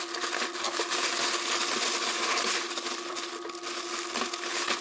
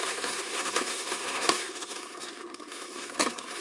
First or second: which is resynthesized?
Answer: second